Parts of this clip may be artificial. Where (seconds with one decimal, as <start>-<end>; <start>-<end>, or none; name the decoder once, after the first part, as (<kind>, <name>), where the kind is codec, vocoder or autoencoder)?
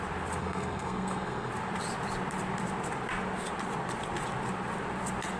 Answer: 0.4-1.5 (codec, SNAC)